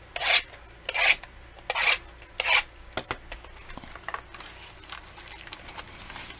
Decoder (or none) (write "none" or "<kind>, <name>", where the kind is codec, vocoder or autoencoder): none